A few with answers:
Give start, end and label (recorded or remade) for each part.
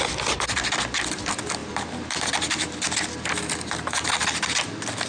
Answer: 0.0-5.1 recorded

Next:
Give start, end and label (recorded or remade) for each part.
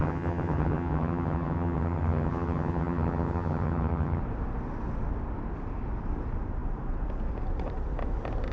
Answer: 0.0-4.2 remade; 4.2-8.5 recorded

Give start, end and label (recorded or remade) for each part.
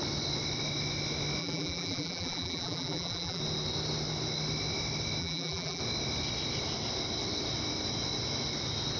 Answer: 0.0-1.4 recorded; 1.4-3.4 remade; 3.4-5.2 recorded; 5.2-5.8 remade; 5.8-9.0 recorded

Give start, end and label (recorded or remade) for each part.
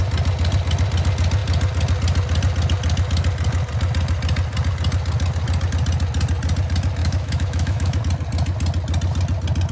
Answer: 0.0-7.0 recorded; 7.0-8.0 remade; 8.0-9.7 recorded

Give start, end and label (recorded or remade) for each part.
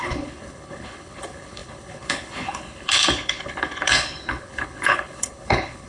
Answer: 0.0-5.9 remade